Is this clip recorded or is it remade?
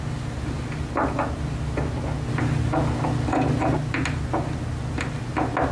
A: recorded